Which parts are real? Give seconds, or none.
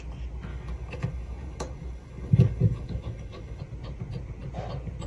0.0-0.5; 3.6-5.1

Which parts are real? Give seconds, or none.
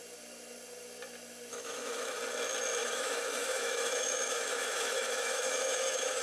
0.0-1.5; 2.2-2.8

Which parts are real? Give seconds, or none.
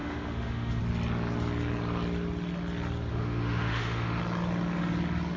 0.8-3.1; 4.2-5.4